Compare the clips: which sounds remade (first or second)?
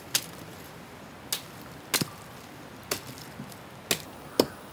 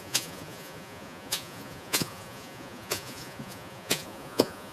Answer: second